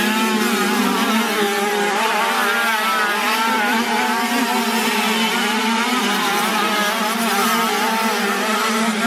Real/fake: real